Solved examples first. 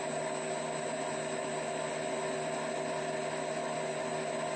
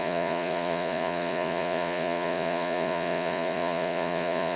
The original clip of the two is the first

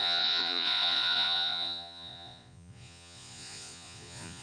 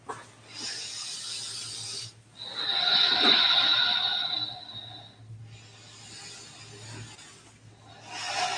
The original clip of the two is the second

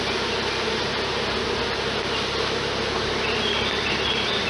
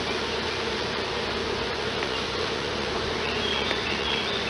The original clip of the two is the first